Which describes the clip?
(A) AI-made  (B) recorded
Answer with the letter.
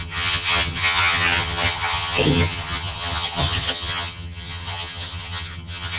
A